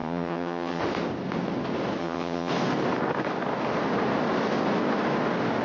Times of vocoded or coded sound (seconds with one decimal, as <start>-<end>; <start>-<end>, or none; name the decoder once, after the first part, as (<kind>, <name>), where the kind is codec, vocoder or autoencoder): 0.0-0.8 (vocoder, HiFi-GAN); 2.0-2.5